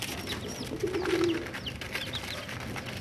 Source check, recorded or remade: recorded